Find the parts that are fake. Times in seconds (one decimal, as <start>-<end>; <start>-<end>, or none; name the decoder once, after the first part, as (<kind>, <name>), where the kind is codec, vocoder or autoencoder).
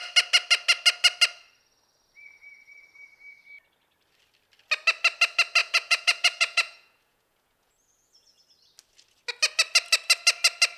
5.6-8.4 (vocoder, Vocos)